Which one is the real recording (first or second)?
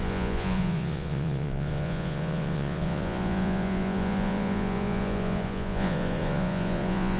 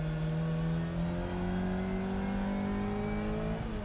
second